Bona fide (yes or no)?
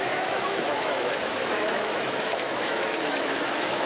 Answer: no